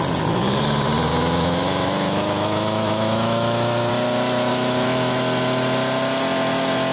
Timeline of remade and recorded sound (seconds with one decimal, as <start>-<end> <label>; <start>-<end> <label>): 0.0-1.1 recorded; 1.1-3.9 remade; 3.9-4.5 recorded; 4.5-5.1 remade; 5.1-6.9 recorded